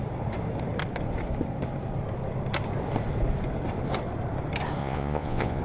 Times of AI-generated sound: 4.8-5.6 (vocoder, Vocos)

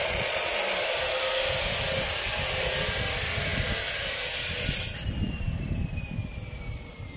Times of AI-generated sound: 0.0-0.5 (vocoder, Vocos)

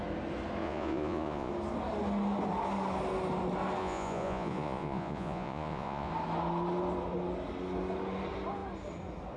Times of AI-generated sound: 0.6-1.5 (vocoder, Vocos); 3.8-6.1

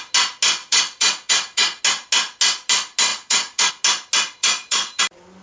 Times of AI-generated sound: 0.6-1.8 (vocoder, Vocos); 3.1-3.7; 4.4-5.0

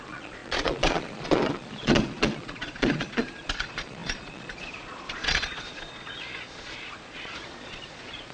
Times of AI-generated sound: 0.0-8.3 (vocoder, Vocos)

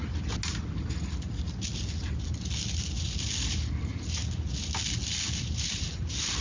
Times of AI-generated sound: none

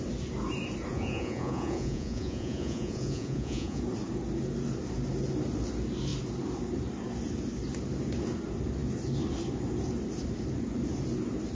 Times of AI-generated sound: 0.9-3.8 (vocoder, Vocos)